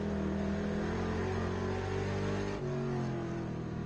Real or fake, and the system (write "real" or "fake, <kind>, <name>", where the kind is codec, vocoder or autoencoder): real